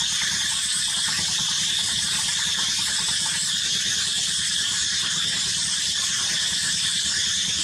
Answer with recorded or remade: remade